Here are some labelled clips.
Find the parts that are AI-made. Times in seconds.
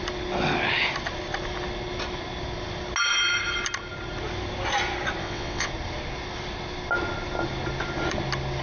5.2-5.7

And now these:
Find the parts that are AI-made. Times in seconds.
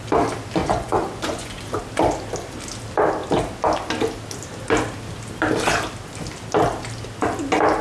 0.6-1.8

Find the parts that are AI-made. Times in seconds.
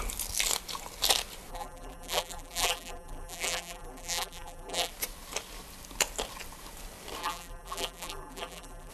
1.5-4.9; 7.2-8.9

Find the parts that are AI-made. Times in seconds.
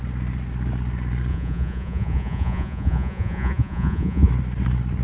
1.3-4.3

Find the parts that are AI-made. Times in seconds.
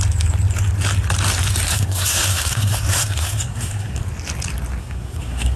1.7-4.0; 4.8-5.6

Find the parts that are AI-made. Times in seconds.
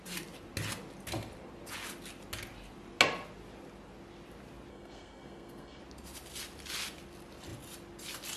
4.7-5.8